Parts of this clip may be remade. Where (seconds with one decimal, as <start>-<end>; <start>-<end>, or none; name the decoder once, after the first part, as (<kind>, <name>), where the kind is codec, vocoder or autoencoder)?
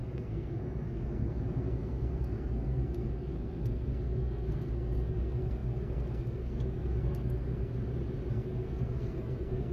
0.0-7.7 (codec, SNAC); 8.3-9.7